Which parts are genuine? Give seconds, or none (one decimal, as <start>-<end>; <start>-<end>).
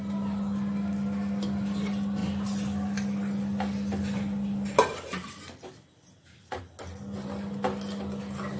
0.0-8.6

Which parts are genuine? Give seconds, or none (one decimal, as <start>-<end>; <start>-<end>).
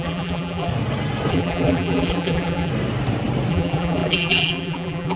0.7-1.3; 2.7-3.5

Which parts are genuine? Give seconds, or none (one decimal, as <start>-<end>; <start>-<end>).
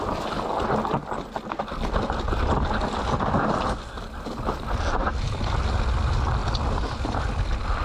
0.0-7.8